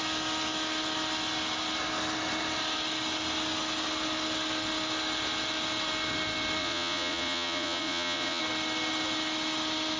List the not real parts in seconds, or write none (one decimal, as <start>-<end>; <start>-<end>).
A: 6.6-8.4

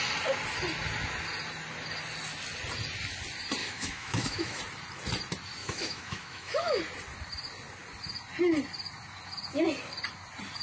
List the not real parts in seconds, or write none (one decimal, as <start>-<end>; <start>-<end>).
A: 3.6-4.6; 5.6-6.8

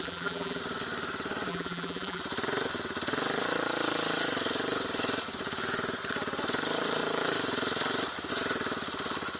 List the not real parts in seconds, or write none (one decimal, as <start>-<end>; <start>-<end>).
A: 0.0-0.6; 1.5-2.2

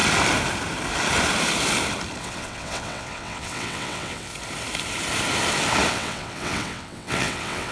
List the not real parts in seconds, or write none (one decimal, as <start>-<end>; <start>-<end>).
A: 2.2-4.3; 5.9-7.7

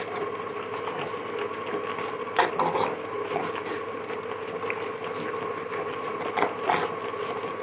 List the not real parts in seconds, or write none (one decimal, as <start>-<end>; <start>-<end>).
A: none